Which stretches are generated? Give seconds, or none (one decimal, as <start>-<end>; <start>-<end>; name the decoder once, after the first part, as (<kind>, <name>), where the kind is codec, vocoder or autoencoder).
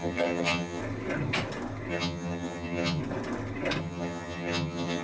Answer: 0.0-0.8 (vocoder, HiFi-GAN); 1.9-3.0; 3.8-5.0